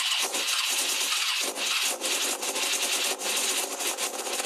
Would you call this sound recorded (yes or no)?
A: yes